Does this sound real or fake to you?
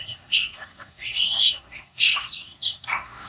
fake